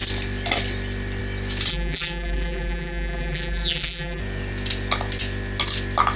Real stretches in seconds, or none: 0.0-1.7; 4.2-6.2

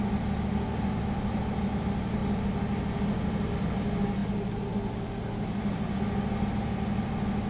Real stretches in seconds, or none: 0.0-7.5

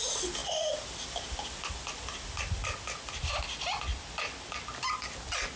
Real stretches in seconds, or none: 0.0-5.6

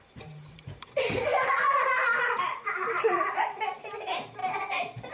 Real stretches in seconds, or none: 1.3-2.3

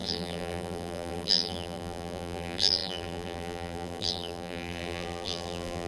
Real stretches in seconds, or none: none

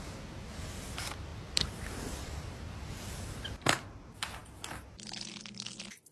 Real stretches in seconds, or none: 0.0-1.3; 3.9-6.1

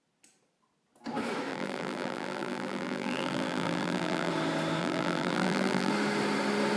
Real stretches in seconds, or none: 0.0-1.5; 4.3-4.8; 5.9-6.8